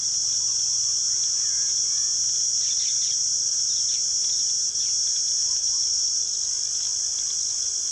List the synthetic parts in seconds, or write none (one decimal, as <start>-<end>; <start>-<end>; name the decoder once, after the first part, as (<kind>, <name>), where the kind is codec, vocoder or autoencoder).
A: none

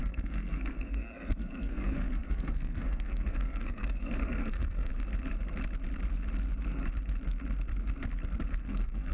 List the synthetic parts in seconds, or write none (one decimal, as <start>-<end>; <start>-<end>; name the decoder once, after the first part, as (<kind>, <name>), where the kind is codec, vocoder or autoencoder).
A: 0.0-4.9 (codec, SNAC); 8.5-9.1

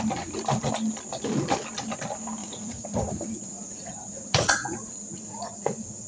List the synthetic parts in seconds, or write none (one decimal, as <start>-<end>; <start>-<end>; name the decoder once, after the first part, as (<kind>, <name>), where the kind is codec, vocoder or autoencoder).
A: 2.4-6.1 (vocoder, Vocos)

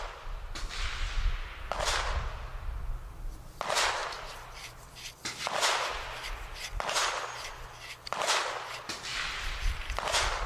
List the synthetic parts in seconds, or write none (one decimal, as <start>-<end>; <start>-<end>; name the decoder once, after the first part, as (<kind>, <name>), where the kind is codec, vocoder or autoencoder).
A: none

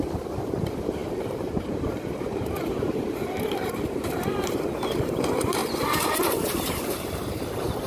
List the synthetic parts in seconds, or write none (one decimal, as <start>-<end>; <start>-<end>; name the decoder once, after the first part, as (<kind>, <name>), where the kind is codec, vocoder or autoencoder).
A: 0.0-5.6 (vocoder, BigVGAN v2); 6.3-7.9